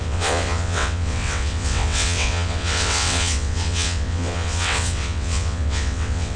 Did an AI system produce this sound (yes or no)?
yes